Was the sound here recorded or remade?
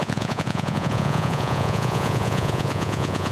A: remade